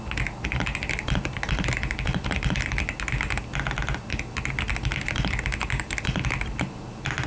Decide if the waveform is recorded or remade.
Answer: recorded